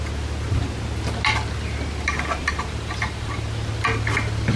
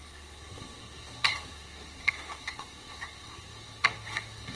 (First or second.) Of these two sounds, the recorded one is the first